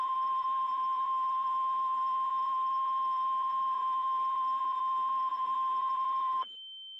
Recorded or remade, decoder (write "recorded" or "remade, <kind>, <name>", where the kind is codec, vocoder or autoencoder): remade, vocoder, BigVGAN v2